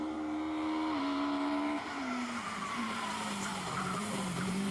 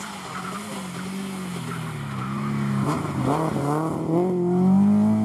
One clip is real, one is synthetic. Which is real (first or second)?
second